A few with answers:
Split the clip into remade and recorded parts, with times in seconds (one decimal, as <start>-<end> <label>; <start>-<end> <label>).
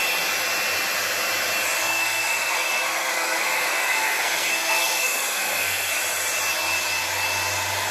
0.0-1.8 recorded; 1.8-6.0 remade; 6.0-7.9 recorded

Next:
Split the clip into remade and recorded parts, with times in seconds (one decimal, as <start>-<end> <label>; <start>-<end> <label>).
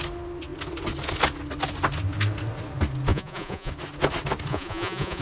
0.0-3.1 recorded; 3.1-3.7 remade; 3.7-4.5 recorded; 4.5-5.2 remade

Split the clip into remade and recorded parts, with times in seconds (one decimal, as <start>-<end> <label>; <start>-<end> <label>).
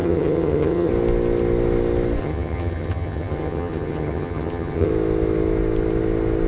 0.0-0.9 remade; 0.9-2.2 recorded; 2.2-4.9 remade; 4.9-6.5 recorded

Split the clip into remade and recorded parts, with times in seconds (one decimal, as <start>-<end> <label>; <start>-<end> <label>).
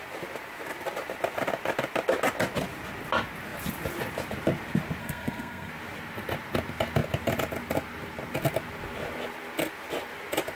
0.0-5.0 recorded; 5.0-5.7 remade; 5.7-10.6 recorded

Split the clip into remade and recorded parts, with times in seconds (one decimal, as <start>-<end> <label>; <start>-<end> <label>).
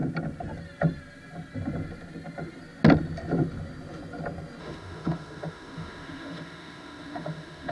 0.0-4.6 recorded; 4.6-7.7 remade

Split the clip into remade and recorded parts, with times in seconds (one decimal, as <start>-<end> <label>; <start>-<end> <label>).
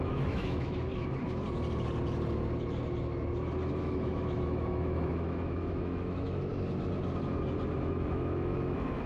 0.0-0.9 remade; 0.9-3.8 recorded; 3.8-6.5 remade; 6.5-7.8 recorded; 7.8-9.1 remade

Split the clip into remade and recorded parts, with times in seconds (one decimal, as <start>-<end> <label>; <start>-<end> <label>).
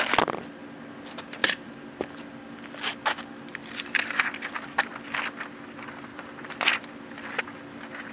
0.0-1.4 recorded; 1.4-2.2 remade; 2.2-3.5 recorded; 3.5-4.9 remade; 4.9-6.1 recorded; 6.1-7.4 remade; 7.4-8.1 recorded